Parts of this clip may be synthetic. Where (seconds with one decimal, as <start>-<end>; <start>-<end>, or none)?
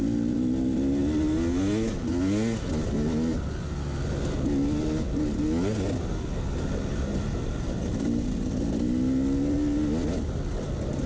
6.9-7.7